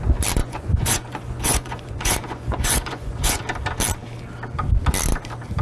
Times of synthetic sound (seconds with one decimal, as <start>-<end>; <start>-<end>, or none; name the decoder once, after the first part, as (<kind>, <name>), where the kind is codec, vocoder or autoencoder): 0.4-3.4 (vocoder, Vocos)